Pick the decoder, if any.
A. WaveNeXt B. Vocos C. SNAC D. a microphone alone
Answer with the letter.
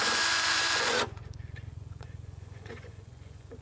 B